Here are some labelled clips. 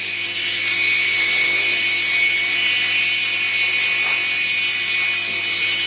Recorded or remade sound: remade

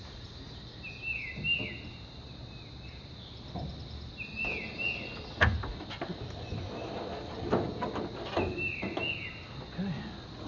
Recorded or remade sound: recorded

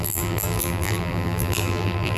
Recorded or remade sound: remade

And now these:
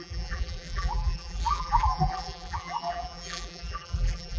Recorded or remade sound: remade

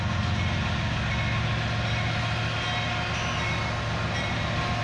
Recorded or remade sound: recorded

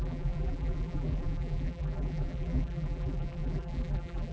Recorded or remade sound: remade